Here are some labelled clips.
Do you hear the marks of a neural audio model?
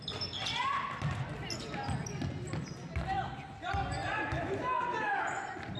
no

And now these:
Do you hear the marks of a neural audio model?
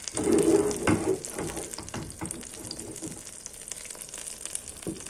no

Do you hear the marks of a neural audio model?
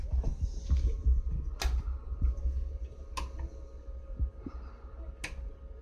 no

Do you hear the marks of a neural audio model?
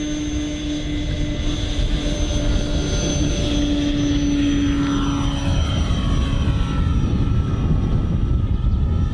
no